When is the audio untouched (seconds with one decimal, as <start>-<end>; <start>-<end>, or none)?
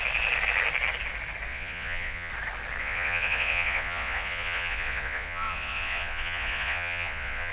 0.0-1.5; 2.3-2.8